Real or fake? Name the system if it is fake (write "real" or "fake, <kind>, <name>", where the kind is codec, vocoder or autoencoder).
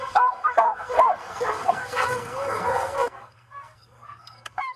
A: fake, codec, SNAC